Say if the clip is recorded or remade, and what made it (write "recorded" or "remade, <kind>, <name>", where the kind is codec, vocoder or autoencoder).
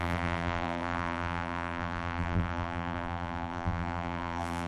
remade, vocoder, BigVGAN v2